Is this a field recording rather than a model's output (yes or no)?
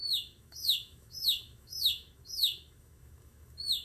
no